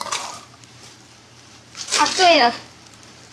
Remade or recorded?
remade